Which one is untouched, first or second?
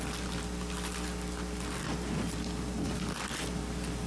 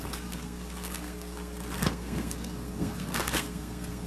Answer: first